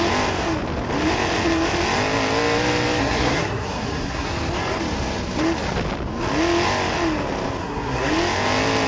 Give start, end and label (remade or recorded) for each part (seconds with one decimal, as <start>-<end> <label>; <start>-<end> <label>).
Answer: 0.0-3.0 recorded; 3.0-4.3 remade; 4.3-7.6 recorded; 7.6-8.1 remade; 8.1-8.9 recorded